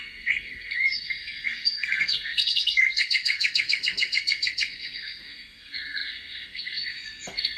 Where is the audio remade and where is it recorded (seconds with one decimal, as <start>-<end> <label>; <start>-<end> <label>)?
0.0-7.6 remade

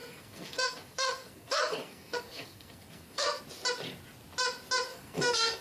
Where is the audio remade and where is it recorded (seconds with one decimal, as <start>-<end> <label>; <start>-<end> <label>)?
0.0-3.4 remade; 3.4-4.9 recorded; 4.9-5.6 remade

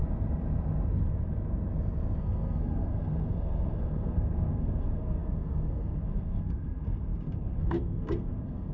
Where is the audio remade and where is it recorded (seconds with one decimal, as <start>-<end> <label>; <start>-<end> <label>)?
0.0-2.2 recorded; 2.2-8.7 remade